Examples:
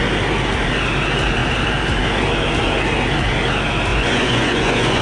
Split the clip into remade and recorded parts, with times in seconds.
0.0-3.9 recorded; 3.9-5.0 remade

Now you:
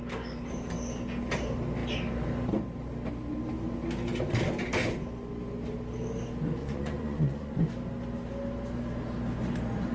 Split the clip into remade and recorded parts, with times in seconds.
0.0-6.6 recorded; 6.6-7.7 remade; 7.7-9.9 recorded

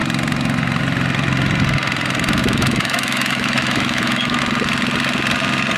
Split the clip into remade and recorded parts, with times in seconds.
0.0-2.4 recorded; 2.4-4.4 remade; 4.4-5.8 recorded